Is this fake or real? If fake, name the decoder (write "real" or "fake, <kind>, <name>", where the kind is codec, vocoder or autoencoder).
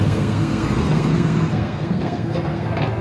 fake, codec, SNAC